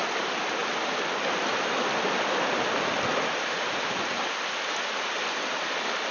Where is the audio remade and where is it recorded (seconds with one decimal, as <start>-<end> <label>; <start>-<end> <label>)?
0.0-3.1 recorded; 3.1-4.2 remade; 4.2-6.1 recorded

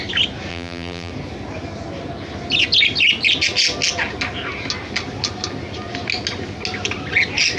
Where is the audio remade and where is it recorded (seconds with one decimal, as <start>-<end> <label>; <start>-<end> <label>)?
0.0-0.5 recorded; 0.5-1.1 remade; 1.1-7.6 recorded